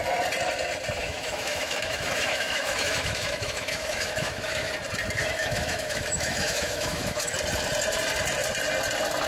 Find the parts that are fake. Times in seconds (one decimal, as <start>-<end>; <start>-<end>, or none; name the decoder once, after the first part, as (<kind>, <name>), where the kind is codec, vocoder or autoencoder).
1.0-4.7 (autoencoder, DAC-VAE); 5.2-7.3